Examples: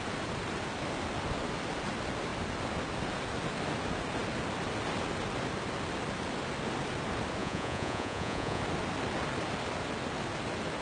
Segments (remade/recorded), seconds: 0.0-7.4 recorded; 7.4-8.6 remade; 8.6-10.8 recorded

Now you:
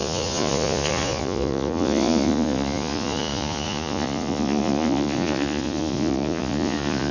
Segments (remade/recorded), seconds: 0.0-7.1 remade

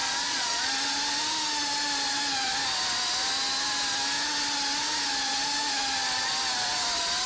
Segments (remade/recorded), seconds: 0.0-0.7 remade; 0.7-7.3 recorded